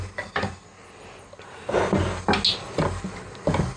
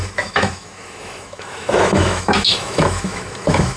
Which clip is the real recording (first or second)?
first